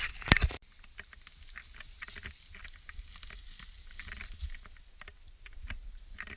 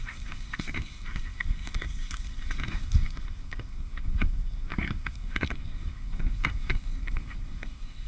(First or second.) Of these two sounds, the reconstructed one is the second